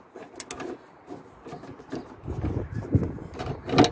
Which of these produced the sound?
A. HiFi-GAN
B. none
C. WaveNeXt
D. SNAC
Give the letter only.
B